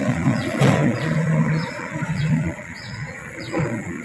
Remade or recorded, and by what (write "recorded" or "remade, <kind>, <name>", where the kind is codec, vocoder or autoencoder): remade, vocoder, Vocos